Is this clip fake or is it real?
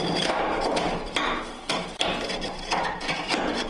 fake